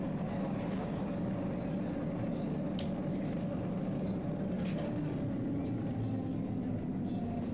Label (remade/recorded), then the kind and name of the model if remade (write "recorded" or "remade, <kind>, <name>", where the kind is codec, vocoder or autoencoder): recorded